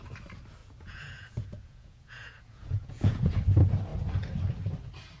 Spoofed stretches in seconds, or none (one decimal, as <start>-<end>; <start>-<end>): 0.6-3.3